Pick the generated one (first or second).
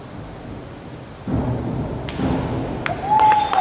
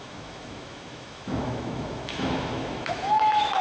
second